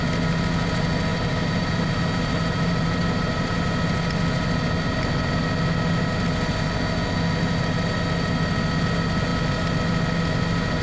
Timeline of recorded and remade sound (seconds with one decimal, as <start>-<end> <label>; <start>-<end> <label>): 0.0-1.1 recorded; 1.1-3.6 remade; 3.6-10.8 recorded